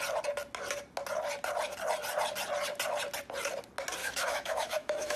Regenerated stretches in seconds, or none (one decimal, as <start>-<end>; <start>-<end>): 4.0-5.2